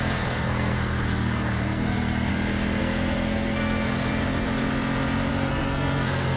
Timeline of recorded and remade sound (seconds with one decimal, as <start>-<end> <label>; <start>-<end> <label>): 0.0-2.3 remade; 2.3-2.8 recorded; 2.8-4.1 remade; 4.1-5.3 recorded; 5.3-6.4 remade